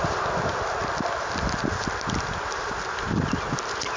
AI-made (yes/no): no